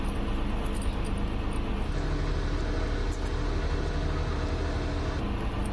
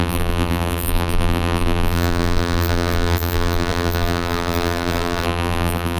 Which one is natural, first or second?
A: first